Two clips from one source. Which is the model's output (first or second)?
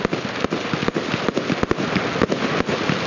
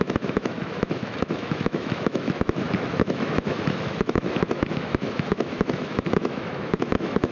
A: second